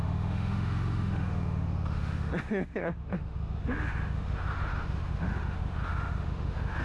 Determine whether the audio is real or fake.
fake